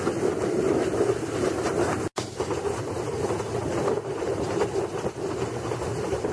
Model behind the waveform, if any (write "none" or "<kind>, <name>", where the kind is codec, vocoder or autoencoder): none